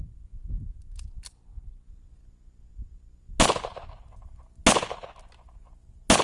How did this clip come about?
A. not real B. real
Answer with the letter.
B